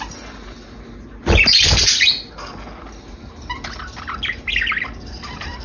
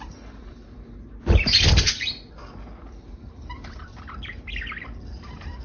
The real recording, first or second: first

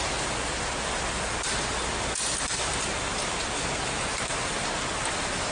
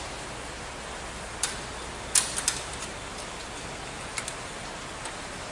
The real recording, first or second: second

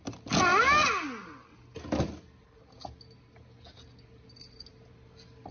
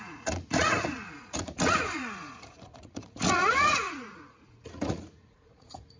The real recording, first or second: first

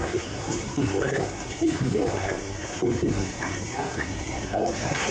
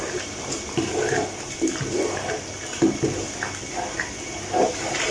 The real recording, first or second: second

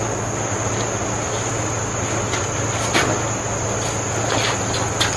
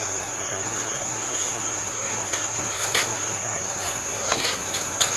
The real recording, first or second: first